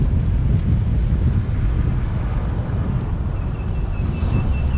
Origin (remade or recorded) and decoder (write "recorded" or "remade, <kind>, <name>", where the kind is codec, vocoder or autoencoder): recorded